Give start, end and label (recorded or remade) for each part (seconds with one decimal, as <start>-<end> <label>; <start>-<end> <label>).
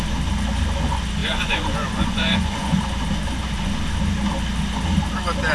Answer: 0.0-1.2 recorded; 1.2-2.8 remade; 2.8-5.5 recorded